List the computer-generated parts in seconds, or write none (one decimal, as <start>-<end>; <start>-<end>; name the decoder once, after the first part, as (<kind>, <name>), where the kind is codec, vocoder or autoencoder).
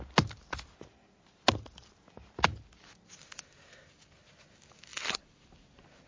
none